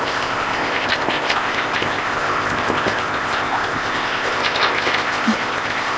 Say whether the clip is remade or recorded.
remade